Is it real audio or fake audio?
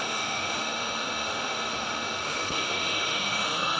fake